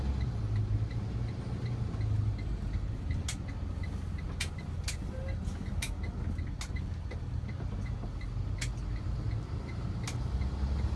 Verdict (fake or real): real